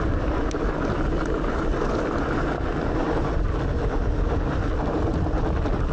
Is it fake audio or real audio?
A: real